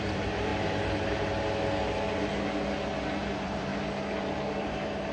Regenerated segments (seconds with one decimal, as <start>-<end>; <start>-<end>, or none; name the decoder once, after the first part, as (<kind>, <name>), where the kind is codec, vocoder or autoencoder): 0.0-0.5 (vocoder, BigVGAN v2); 1.9-2.3; 3.2-3.7; 4.2-5.1